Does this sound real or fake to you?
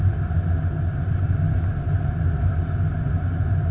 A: real